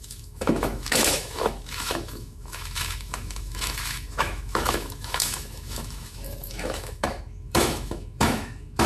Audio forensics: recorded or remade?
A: remade